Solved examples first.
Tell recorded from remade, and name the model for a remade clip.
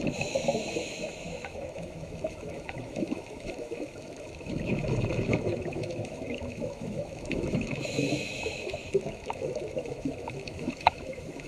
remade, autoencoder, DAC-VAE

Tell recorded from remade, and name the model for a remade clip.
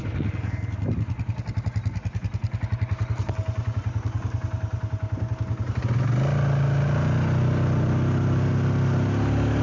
recorded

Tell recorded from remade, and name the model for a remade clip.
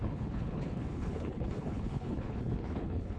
remade, codec, HILCodec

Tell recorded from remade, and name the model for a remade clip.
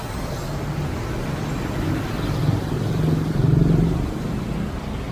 recorded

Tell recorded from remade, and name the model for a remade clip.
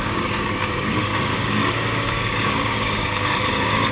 remade, codec, DAC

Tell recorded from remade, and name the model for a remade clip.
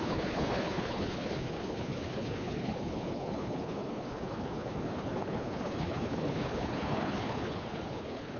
remade, codec, HILCodec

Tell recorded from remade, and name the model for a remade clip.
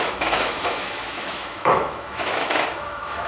remade, autoencoder, DAC-VAE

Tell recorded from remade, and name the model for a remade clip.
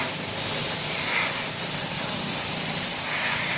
recorded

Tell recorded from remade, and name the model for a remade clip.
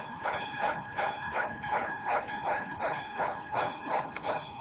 remade, codec, HILCodec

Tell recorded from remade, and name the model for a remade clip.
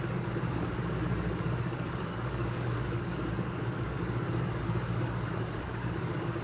remade, codec, DAC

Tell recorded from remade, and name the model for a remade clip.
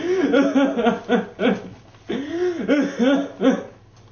recorded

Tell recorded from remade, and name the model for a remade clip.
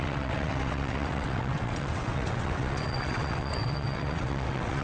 remade, vocoder, WaveNeXt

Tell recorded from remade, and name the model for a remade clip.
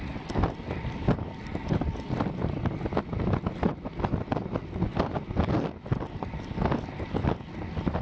recorded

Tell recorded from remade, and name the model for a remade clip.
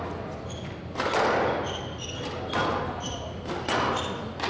recorded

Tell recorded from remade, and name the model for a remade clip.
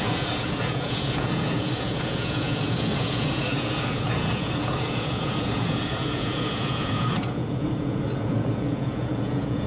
remade, vocoder, Vocos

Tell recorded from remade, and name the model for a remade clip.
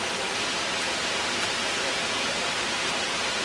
recorded